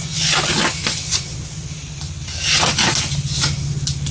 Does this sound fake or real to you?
real